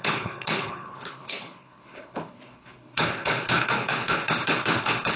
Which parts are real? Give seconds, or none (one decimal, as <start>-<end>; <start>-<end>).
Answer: none